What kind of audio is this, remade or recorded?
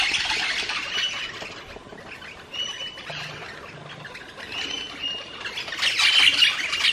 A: recorded